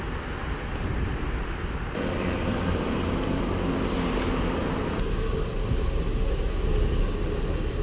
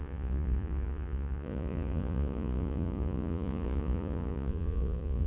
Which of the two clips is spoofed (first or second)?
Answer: second